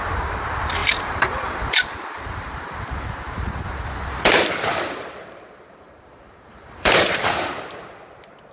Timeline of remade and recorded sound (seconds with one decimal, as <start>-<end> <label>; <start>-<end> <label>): 0.0-0.8 recorded; 0.8-1.6 remade; 1.6-4.7 recorded; 4.7-7.5 remade; 7.5-8.5 recorded